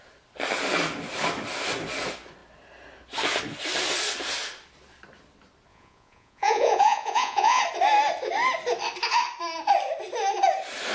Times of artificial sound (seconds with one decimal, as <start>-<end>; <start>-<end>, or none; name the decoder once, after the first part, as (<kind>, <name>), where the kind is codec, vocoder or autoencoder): 5.7-7.6 (vocoder, Vocos)